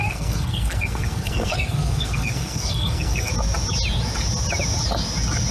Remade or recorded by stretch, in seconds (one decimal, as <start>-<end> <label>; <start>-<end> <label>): 0.0-3.3 remade; 3.3-5.5 recorded